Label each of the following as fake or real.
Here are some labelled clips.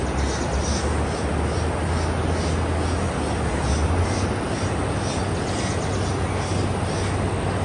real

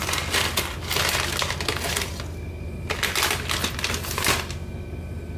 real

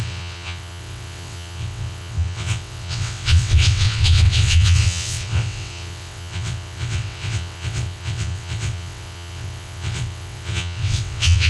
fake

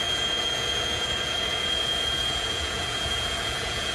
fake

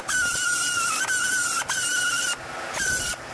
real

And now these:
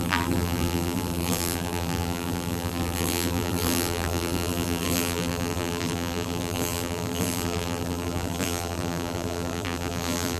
fake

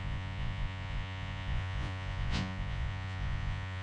fake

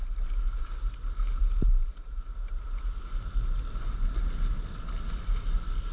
real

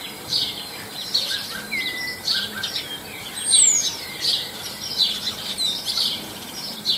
fake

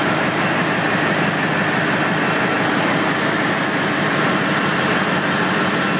real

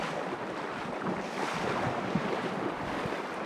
real